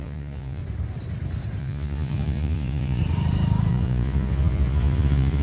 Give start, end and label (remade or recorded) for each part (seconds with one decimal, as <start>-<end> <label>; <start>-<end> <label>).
0.0-0.6 remade; 0.6-1.6 recorded; 1.6-3.0 remade; 3.0-3.7 recorded; 3.7-5.4 remade